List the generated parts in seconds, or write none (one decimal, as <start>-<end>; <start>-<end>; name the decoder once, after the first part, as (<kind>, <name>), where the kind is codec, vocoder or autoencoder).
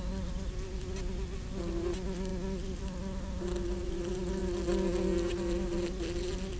none